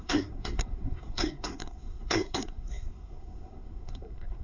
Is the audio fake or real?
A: fake